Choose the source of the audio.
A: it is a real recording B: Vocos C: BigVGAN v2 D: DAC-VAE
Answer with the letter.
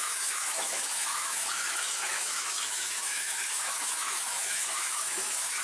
D